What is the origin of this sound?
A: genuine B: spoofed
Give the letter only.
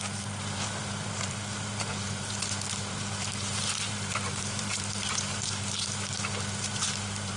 B